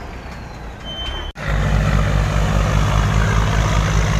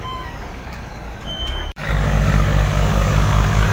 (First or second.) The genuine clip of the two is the first